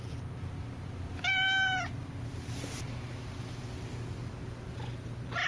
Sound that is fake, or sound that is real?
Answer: real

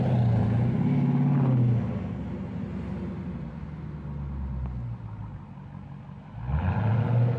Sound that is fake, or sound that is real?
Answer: real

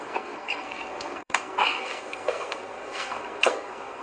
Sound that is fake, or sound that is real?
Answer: fake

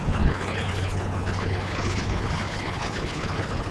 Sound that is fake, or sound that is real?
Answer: fake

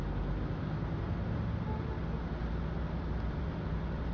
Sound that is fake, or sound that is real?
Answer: real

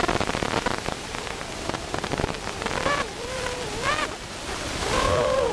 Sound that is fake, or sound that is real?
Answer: fake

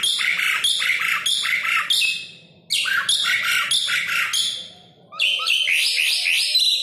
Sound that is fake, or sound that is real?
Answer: real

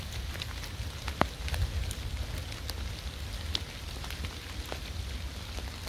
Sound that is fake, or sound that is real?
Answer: real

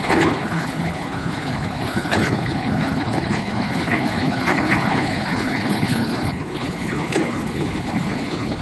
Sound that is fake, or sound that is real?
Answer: fake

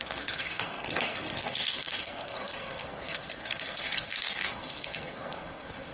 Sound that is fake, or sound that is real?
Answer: fake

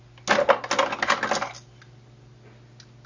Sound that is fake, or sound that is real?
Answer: real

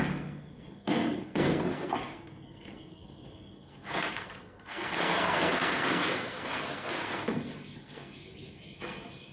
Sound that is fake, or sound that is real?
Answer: fake